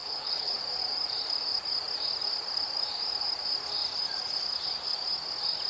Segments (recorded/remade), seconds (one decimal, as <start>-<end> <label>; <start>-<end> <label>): 0.0-0.6 remade; 0.6-5.7 recorded